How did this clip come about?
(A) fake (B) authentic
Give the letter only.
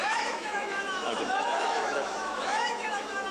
A